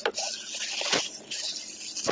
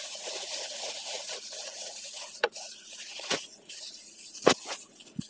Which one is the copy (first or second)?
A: second